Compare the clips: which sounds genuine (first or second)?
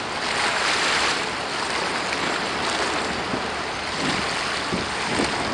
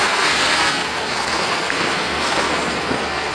first